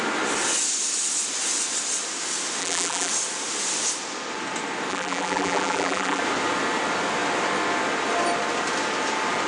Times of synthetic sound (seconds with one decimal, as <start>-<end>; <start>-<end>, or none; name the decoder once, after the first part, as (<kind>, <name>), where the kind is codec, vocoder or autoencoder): 2.6-3.1 (vocoder, BigVGAN v2); 4.9-6.2